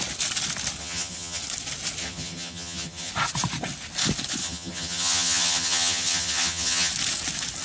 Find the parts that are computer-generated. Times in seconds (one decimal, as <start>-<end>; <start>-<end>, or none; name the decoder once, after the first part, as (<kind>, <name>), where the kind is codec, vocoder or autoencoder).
0.8-1.4 (vocoder, HiFi-GAN); 2.0-3.1; 4.4-6.9